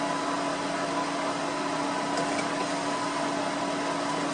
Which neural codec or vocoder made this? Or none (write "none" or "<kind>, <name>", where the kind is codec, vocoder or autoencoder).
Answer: none